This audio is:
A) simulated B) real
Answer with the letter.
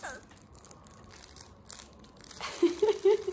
B